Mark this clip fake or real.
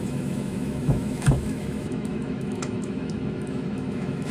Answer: fake